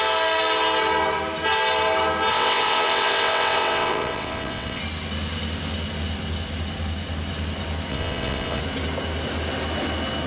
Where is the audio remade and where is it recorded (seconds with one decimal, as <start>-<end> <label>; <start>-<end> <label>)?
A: 0.0-2.3 recorded; 2.3-4.8 remade; 4.8-7.9 recorded; 7.9-8.6 remade; 8.6-10.3 recorded